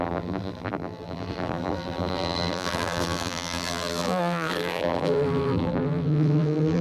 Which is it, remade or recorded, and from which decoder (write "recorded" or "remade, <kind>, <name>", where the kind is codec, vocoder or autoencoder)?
remade, vocoder, BigVGAN v2